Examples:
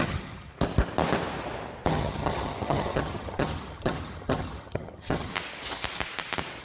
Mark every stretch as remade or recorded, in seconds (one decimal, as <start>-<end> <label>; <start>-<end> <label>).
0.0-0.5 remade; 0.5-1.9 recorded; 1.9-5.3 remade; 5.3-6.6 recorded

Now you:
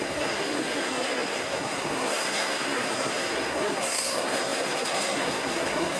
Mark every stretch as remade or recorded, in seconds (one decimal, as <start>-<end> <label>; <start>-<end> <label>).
0.0-6.0 remade

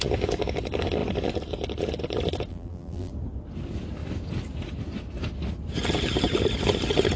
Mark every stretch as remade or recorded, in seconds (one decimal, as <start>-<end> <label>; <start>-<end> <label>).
0.0-2.5 recorded; 2.5-3.1 remade; 3.1-7.2 recorded